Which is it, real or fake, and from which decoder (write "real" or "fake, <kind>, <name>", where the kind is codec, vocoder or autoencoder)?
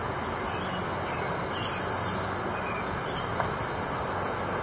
real